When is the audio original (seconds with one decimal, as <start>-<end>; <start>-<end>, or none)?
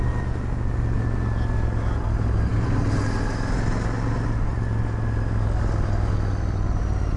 0.0-7.2